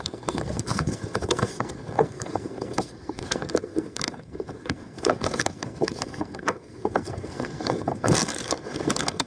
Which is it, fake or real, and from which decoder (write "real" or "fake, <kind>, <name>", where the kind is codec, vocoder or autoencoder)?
fake, codec, SNAC